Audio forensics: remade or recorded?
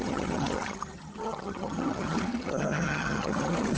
remade